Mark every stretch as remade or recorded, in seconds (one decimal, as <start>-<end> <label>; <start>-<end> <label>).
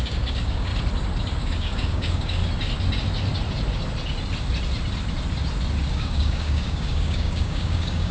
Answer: 0.0-0.7 remade; 0.7-1.4 recorded; 1.4-2.4 remade; 2.4-5.9 recorded; 5.9-8.1 remade